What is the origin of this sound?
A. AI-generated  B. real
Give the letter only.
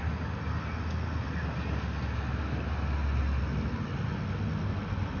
B